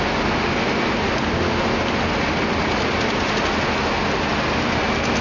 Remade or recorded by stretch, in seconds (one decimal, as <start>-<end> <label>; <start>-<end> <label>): 0.0-5.2 recorded